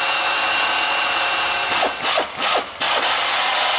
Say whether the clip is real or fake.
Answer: real